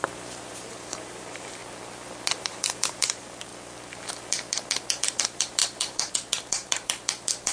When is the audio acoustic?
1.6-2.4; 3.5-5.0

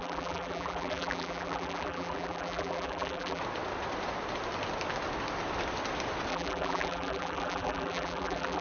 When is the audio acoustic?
3.4-6.3

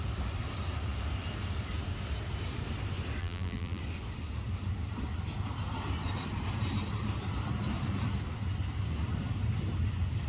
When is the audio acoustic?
0.0-3.2; 3.8-10.3